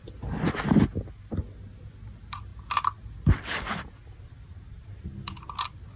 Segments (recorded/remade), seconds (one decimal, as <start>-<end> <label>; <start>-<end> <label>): 0.0-6.0 recorded